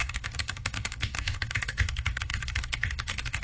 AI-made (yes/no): yes